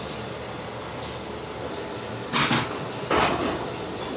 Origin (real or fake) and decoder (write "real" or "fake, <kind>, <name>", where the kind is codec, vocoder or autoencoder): real